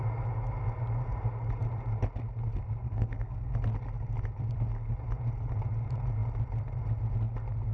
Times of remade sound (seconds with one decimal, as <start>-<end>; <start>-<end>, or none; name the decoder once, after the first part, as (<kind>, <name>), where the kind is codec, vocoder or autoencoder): 2.8-3.5 (codec, SNAC)